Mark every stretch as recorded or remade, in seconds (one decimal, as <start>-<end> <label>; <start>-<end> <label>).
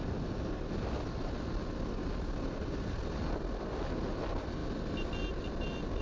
0.0-6.0 recorded